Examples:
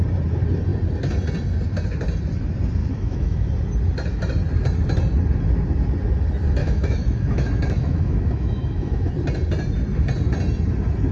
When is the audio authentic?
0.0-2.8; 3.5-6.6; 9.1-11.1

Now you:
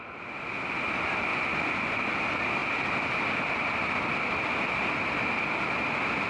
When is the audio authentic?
0.0-1.3; 2.0-6.3

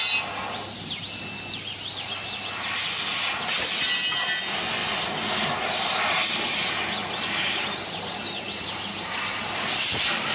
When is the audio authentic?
0.0-10.3

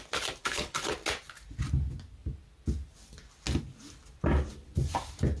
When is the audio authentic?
0.0-0.4; 0.9-5.4

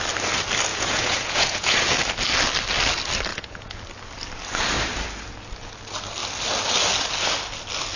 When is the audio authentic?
0.0-0.7; 1.9-3.3; 3.8-8.0

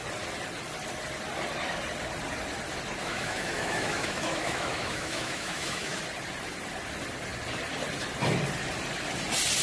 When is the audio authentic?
0.0-3.0; 6.0-9.6

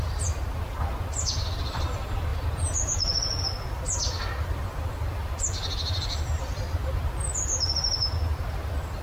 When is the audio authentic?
0.0-9.0